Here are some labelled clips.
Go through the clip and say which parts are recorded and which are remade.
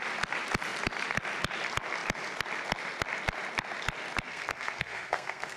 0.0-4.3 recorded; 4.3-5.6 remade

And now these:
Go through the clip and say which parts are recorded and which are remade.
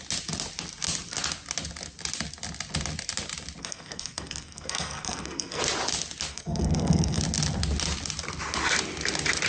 0.0-3.6 recorded; 3.6-5.6 remade; 5.6-6.3 recorded; 6.3-7.2 remade; 7.2-9.5 recorded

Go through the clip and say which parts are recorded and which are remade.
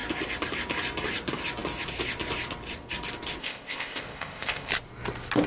0.0-3.4 recorded; 3.4-4.7 remade; 4.7-5.5 recorded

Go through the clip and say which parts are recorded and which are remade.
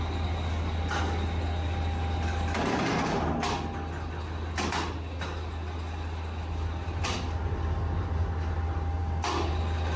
0.0-10.0 recorded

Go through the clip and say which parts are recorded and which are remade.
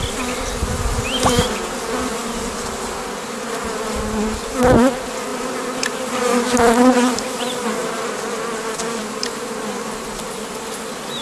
0.0-11.2 recorded